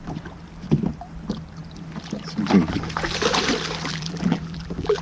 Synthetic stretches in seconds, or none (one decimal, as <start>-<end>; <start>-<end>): 3.9-5.0